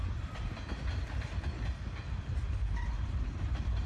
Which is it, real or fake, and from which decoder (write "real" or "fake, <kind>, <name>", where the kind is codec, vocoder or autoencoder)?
real